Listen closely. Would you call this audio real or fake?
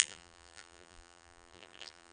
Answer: fake